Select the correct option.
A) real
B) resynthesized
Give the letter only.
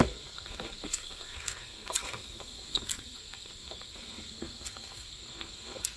B